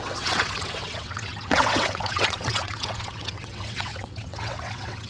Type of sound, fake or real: fake